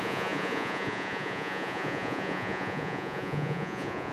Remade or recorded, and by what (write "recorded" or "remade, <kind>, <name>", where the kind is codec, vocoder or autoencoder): remade, vocoder, Vocos